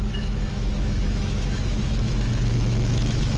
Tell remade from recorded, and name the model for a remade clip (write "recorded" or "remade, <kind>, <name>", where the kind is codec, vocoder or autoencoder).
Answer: remade, autoencoder, DAC-VAE